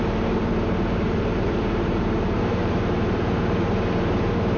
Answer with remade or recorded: remade